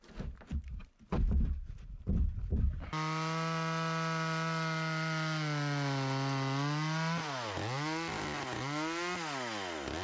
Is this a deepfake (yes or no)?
no